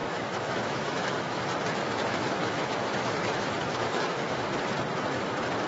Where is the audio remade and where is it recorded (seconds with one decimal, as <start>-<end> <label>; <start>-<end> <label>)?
0.0-1.4 remade; 1.4-1.8 recorded; 1.8-4.4 remade; 4.4-5.7 recorded